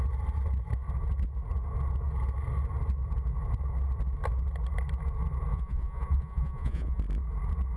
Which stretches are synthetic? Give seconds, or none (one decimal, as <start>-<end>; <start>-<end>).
5.5-7.0